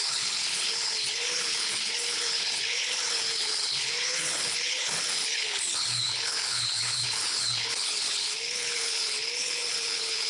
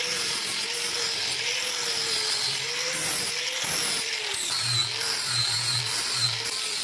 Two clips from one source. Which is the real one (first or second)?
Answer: second